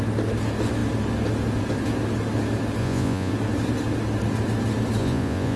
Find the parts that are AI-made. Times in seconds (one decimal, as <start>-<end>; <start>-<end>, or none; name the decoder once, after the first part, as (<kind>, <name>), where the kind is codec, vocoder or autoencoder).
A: 2.8-3.3 (vocoder, Vocos); 5.0-5.6